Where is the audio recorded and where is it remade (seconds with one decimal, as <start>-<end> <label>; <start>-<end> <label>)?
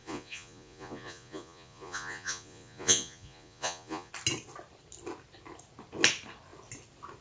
0.0-4.1 remade; 4.1-7.2 recorded